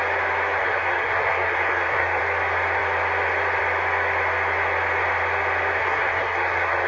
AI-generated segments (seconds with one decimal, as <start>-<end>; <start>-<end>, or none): 0.6-2.2; 5.8-6.9